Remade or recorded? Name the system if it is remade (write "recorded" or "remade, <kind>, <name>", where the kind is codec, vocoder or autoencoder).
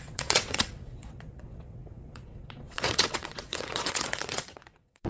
remade, vocoder, WaveNeXt